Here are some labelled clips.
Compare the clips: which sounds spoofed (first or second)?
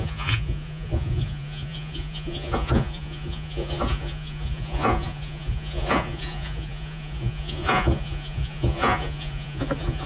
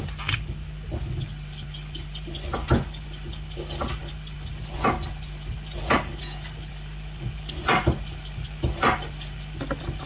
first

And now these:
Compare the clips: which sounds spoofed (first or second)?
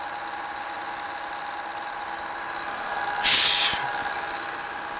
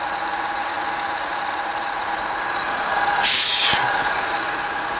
second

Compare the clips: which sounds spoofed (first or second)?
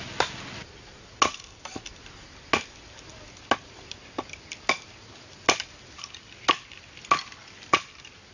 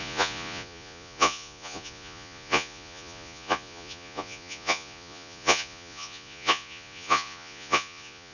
second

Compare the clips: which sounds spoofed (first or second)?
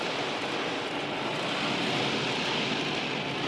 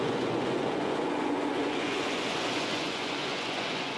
second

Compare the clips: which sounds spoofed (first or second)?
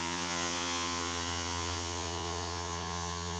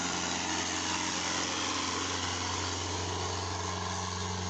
first